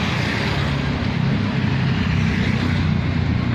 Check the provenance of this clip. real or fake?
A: real